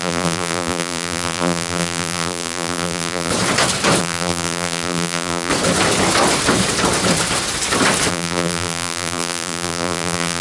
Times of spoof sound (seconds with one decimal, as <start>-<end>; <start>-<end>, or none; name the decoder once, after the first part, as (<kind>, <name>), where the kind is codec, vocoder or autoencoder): 0.0-3.3 (vocoder, BigVGAN v2); 4.0-5.5; 8.1-10.4